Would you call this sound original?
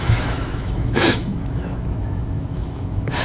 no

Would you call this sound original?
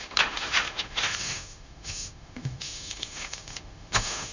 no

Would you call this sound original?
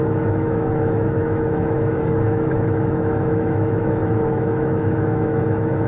no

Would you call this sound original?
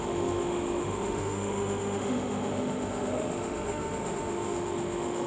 no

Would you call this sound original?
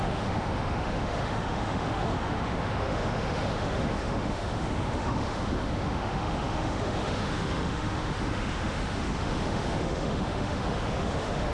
no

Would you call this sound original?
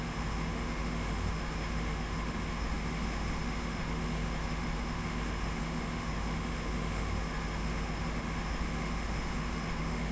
no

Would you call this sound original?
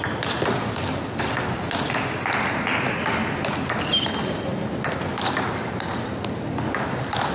yes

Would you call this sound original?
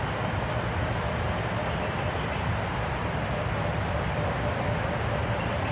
yes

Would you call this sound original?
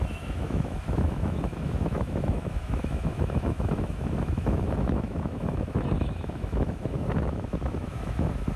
no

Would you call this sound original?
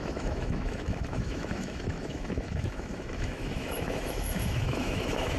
no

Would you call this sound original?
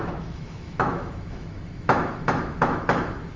no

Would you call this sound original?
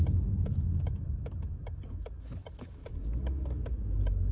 no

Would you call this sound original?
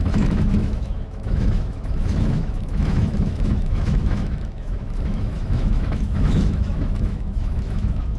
no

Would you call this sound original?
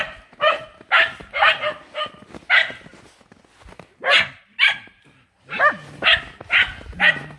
yes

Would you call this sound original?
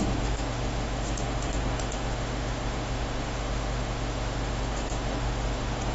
no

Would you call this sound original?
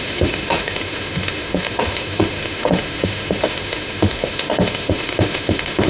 no